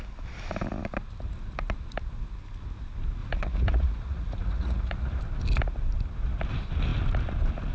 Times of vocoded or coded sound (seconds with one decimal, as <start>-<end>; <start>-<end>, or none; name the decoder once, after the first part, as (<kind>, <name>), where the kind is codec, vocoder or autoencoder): 3.2-5.2 (vocoder, Vocos)